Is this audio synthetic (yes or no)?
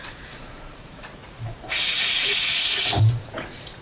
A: yes